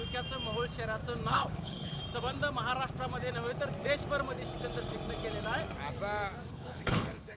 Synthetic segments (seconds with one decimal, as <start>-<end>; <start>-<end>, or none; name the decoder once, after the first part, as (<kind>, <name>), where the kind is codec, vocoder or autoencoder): 1.3-2.0 (codec, HILCodec); 6.5-7.4